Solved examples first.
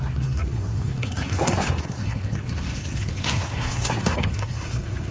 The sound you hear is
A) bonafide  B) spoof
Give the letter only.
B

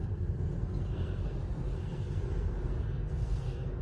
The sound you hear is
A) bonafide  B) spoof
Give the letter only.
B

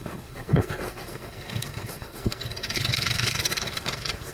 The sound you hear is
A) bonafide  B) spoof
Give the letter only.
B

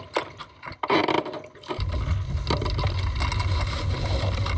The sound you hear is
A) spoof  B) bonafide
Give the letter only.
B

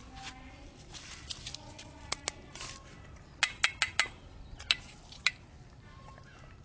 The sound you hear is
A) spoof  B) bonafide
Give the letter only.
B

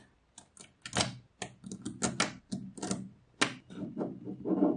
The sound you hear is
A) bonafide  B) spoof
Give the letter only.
A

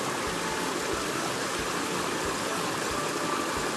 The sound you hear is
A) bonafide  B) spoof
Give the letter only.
A